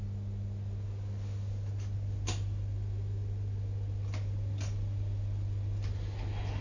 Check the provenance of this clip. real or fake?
real